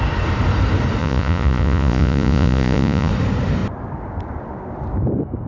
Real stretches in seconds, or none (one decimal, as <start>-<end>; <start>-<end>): 0.0-1.0; 3.1-5.5